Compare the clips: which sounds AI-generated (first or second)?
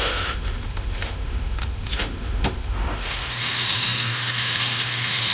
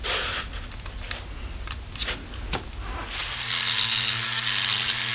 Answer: first